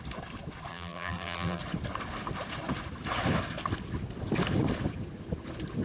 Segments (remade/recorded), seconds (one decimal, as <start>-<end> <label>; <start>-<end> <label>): 0.0-0.7 recorded; 0.7-1.6 remade; 1.6-5.8 recorded

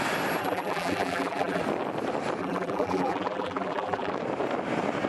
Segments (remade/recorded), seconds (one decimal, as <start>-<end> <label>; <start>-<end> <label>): 0.0-0.4 recorded; 0.4-1.6 remade; 1.6-2.4 recorded; 2.4-4.1 remade; 4.1-5.1 recorded

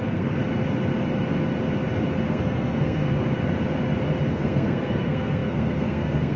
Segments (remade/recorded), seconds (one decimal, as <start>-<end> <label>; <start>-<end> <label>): 0.0-0.4 remade; 0.4-2.3 recorded; 2.3-3.1 remade; 3.1-4.3 recorded; 4.3-6.4 remade

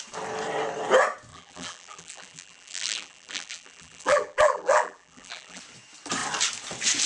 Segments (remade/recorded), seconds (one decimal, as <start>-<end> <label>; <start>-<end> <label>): 0.0-1.3 recorded; 1.3-5.6 remade; 5.6-7.1 recorded

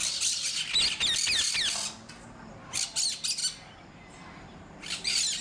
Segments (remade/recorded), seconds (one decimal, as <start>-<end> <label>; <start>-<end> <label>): 0.0-5.4 recorded

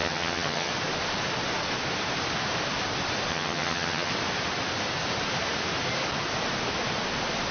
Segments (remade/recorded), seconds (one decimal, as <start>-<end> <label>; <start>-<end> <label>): 0.0-0.7 remade; 0.7-3.3 recorded; 3.3-4.1 remade; 4.1-7.5 recorded